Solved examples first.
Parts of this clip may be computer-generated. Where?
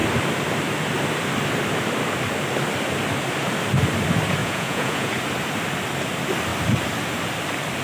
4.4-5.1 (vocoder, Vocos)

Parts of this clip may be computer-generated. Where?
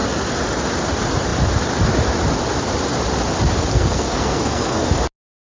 3.7-4.9 (codec, SNAC)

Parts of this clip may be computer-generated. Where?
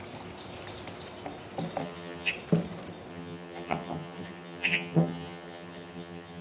1.8-2.3 (vocoder, HiFi-GAN); 3.1-6.4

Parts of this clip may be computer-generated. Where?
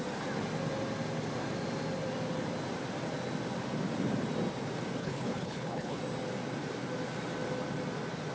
5.0-6.0 (codec, HILCodec)